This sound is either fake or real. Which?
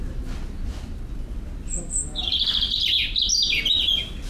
real